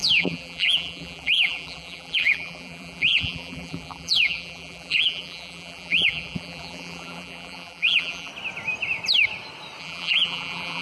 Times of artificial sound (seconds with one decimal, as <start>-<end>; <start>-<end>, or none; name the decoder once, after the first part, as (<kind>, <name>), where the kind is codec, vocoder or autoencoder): 0.0-8.3 (vocoder, BigVGAN v2); 9.8-10.8